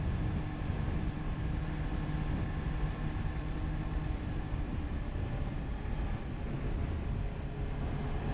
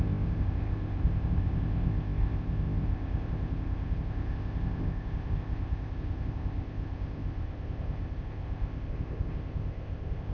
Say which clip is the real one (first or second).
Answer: first